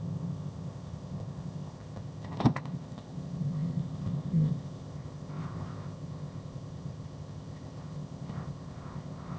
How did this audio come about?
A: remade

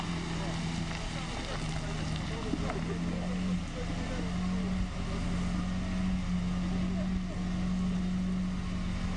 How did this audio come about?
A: recorded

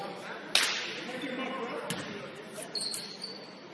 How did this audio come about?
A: recorded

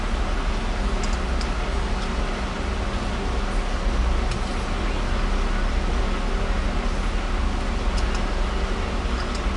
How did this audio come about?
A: recorded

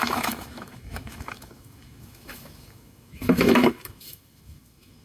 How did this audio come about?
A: remade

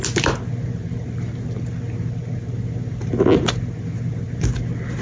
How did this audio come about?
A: recorded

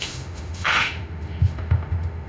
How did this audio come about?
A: remade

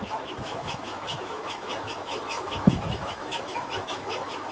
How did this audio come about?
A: remade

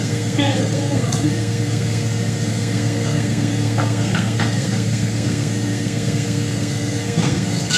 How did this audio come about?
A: remade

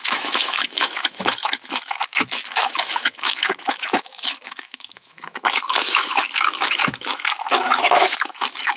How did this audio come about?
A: remade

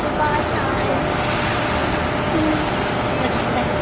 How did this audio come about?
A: recorded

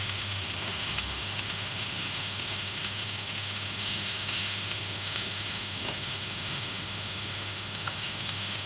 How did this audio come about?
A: remade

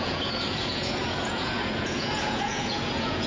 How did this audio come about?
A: remade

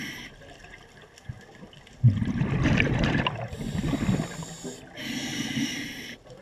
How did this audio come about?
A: recorded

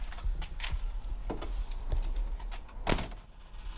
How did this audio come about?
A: recorded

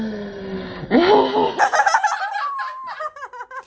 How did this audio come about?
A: recorded